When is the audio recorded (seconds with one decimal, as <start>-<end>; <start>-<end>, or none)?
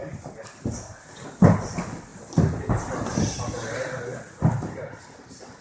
0.0-5.6